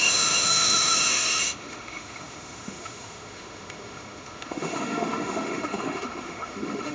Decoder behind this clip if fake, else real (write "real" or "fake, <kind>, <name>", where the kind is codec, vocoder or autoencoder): fake, autoencoder, DAC-VAE